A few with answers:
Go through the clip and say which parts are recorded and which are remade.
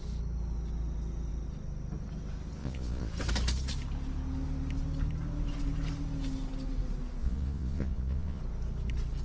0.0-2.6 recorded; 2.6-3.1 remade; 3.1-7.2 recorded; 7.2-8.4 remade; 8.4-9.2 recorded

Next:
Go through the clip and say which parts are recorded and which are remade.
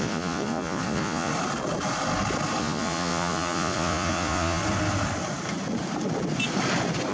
0.0-1.3 remade; 1.3-2.6 recorded; 2.6-4.6 remade; 4.6-7.1 recorded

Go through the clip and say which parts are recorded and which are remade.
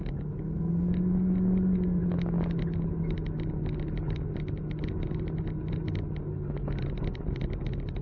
0.0-8.0 recorded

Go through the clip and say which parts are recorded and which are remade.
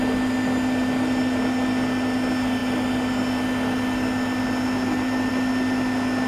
0.0-6.3 recorded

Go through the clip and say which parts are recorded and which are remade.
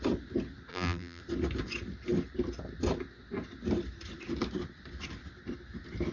0.0-0.7 recorded; 0.7-1.2 remade; 1.2-6.1 recorded